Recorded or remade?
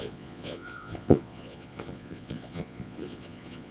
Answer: remade